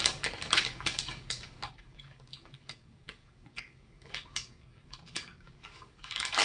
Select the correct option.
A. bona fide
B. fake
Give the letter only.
B